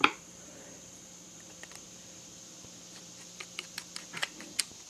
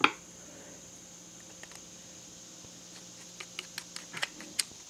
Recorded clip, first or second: second